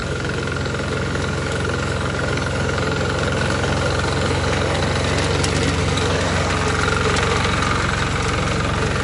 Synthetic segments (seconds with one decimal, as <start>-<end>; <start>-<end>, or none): 0.0-4.8; 5.8-6.5